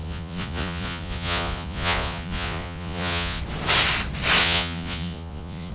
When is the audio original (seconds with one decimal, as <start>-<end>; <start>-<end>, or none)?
3.4-4.4